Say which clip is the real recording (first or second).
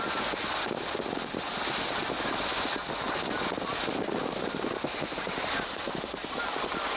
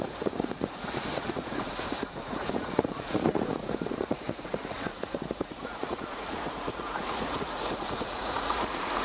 first